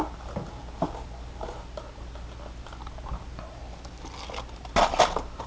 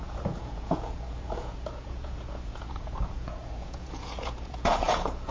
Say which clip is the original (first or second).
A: first